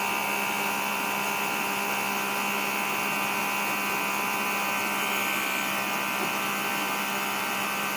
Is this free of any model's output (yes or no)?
yes